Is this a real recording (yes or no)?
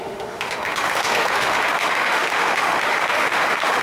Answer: no